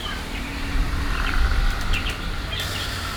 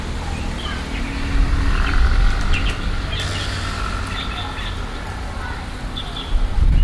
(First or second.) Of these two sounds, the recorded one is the second